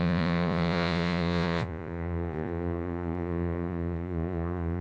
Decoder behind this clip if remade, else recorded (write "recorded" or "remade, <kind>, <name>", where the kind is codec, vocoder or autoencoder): remade, vocoder, Vocos